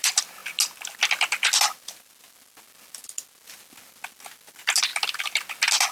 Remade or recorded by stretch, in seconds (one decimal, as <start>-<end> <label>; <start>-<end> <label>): 0.0-5.9 recorded